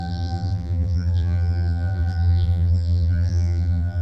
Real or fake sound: fake